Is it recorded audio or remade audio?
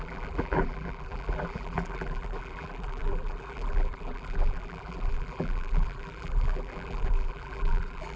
remade